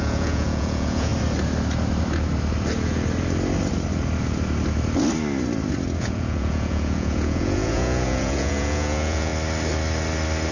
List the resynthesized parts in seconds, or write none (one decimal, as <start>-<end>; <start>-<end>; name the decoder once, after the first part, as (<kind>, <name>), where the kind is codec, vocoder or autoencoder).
0.0-1.1 (vocoder, Vocos); 6.0-9.3